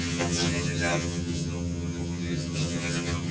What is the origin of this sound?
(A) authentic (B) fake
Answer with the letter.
B